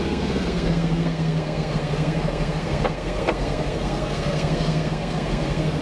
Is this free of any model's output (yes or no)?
no